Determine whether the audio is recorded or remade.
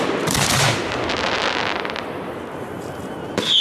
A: recorded